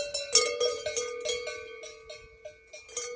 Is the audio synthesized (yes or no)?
no